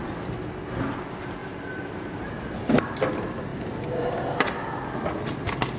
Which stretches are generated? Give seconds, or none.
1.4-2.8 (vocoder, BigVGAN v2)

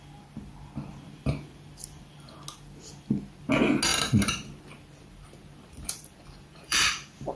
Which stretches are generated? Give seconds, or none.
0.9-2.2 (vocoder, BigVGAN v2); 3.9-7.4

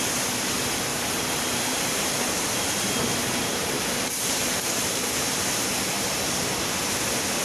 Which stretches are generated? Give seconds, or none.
0.9-5.3 (vocoder, BigVGAN v2)

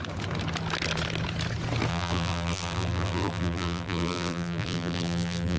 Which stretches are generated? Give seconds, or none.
1.9-5.6 (vocoder, BigVGAN v2)